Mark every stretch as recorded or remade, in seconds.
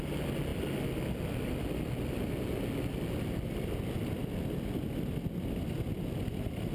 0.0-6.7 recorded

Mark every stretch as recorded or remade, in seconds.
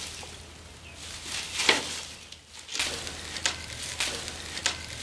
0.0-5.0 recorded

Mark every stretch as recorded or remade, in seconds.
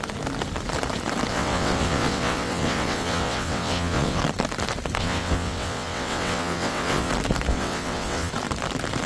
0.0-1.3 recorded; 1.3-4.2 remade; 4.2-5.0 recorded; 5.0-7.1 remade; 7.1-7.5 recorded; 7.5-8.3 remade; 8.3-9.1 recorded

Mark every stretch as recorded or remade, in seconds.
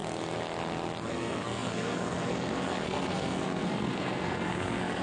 0.0-1.1 recorded; 1.1-5.0 remade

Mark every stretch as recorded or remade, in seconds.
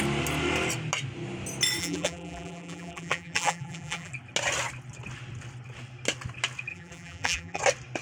0.0-1.8 recorded; 1.8-4.1 remade; 4.1-6.7 recorded; 6.7-7.6 remade; 7.6-8.0 recorded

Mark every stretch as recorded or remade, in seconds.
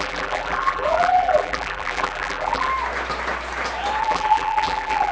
0.0-2.7 remade; 2.7-4.0 recorded; 4.0-5.1 remade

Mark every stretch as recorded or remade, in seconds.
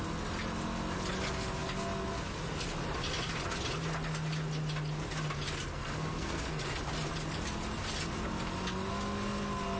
0.0-5.7 recorded; 5.7-6.6 remade; 6.6-9.8 recorded